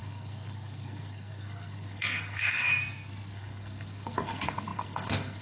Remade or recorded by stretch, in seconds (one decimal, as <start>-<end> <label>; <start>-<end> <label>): 0.0-5.4 remade